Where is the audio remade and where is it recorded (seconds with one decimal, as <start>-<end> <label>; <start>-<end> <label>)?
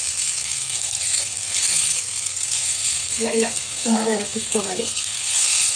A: 0.0-5.8 remade